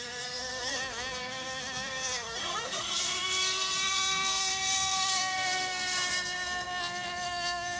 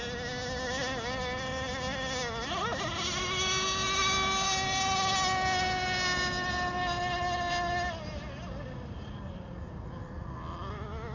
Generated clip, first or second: first